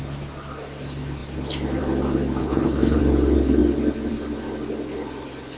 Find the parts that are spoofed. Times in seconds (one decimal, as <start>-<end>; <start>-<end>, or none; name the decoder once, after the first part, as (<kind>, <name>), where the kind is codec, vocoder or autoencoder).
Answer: 2.4-3.0 (codec, HILCodec)